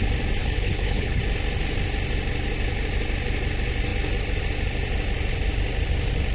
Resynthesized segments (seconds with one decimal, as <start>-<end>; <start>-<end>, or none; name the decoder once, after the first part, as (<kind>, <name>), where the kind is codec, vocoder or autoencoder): 0.4-1.2 (codec, HILCodec)